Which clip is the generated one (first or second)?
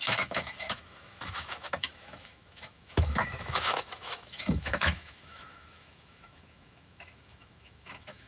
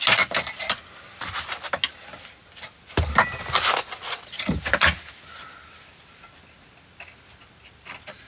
first